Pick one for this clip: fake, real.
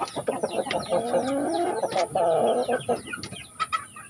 real